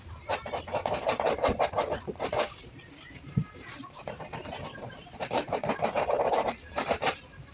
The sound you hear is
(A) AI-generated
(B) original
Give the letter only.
A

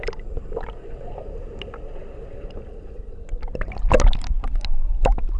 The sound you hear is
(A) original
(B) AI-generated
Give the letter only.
A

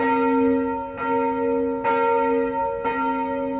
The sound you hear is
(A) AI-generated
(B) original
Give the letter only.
B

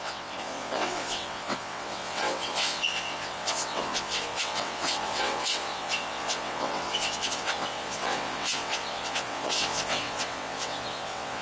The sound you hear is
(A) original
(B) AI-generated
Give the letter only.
B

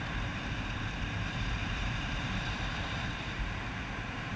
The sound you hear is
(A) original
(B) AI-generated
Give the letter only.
B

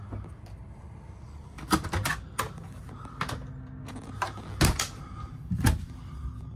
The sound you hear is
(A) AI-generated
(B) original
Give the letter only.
B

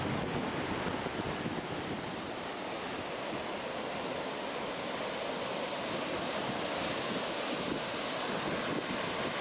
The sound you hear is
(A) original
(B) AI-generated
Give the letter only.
A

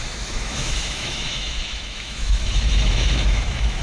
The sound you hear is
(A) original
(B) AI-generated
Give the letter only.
B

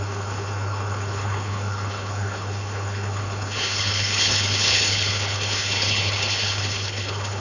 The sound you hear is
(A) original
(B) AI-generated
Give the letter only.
B